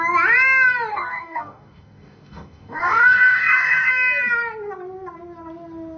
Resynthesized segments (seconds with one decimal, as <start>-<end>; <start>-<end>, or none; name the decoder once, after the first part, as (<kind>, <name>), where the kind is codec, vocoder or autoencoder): 0.9-3.9 (codec, DAC)